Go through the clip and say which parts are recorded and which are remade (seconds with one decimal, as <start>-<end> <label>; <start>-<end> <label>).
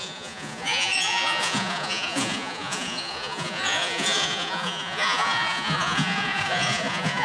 0.0-7.2 remade